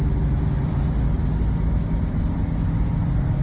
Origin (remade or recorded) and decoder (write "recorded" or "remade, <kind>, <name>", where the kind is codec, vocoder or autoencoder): recorded